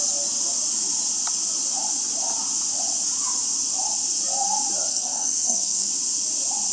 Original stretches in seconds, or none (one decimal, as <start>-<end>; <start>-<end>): 0.0-4.9; 5.9-6.7